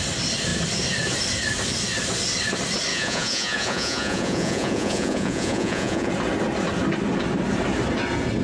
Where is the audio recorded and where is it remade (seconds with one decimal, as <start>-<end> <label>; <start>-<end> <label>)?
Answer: 0.0-2.9 recorded; 2.9-6.1 remade; 6.1-8.4 recorded